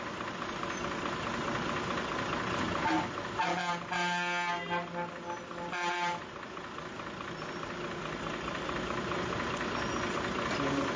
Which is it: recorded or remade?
recorded